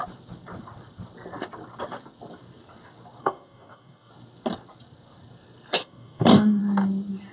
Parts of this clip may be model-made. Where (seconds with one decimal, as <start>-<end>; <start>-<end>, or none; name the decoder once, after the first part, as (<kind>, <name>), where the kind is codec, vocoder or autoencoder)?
3.2-4.1 (codec, DAC); 5.8-6.6

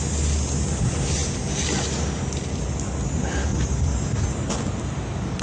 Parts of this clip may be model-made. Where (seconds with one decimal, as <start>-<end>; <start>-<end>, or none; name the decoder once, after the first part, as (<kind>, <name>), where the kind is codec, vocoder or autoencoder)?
none

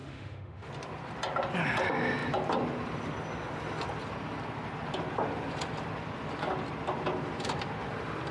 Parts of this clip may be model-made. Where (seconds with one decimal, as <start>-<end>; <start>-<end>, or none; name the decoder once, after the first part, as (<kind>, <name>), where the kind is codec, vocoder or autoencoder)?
0.0-0.7 (autoencoder, DAC-VAE)

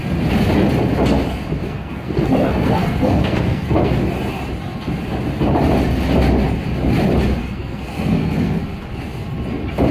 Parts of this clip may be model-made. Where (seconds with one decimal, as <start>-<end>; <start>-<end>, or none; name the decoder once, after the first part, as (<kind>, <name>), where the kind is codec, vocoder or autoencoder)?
1.6-4.0 (codec, SNAC); 7.4-8.6

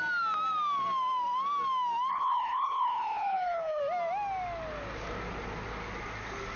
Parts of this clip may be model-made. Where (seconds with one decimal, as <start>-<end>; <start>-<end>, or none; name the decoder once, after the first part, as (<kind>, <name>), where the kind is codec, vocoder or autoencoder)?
2.1-3.8 (codec, HILCodec)

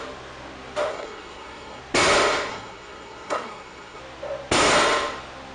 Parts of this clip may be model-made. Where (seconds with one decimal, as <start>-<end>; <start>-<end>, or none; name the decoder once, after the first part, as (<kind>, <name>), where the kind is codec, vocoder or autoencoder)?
0.9-1.8 (codec, SNAC); 2.5-4.0

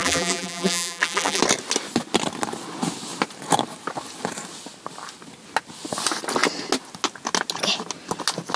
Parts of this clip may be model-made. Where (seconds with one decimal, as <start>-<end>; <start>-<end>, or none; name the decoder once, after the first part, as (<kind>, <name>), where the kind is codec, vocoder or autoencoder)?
0.0-1.4 (vocoder, BigVGAN v2)

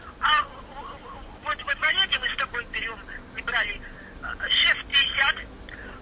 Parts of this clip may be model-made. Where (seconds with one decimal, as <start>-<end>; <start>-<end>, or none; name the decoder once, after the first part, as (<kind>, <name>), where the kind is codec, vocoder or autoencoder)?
1.5-2.2 (codec, DAC)